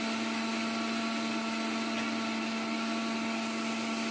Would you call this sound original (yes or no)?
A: yes